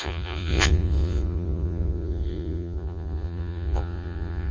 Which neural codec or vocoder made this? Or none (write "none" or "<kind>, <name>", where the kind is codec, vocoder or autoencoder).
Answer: vocoder, Vocos